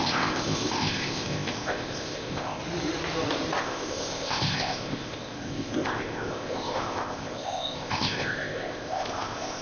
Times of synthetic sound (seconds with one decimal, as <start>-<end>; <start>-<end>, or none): 0.0-2.6; 3.6-9.6